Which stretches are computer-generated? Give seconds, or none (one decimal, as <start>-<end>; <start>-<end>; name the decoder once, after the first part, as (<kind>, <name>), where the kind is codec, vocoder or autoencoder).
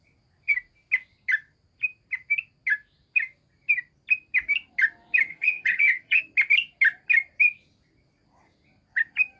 5.3-6.2 (vocoder, HiFi-GAN)